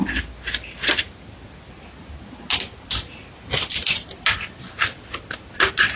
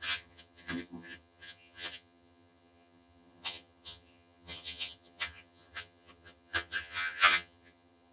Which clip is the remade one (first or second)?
second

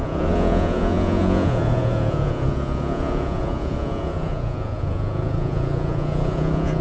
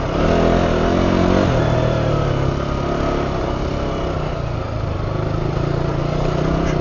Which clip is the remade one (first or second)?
first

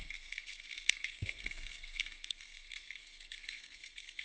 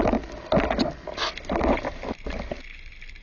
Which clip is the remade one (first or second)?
first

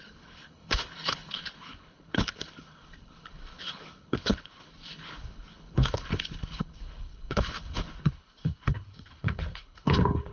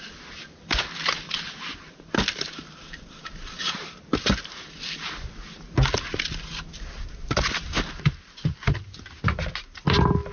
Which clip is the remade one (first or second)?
first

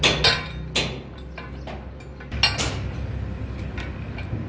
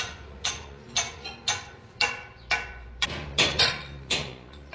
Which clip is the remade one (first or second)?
second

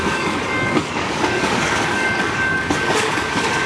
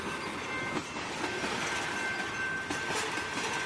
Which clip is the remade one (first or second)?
first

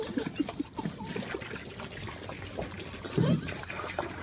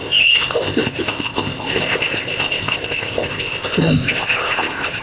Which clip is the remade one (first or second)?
second